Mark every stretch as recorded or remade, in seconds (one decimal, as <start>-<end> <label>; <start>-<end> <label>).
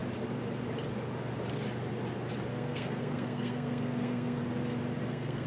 0.0-2.5 recorded; 2.5-4.4 remade; 4.4-5.1 recorded; 5.1-5.5 remade